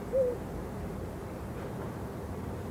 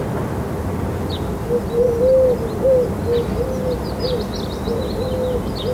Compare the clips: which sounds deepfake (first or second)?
first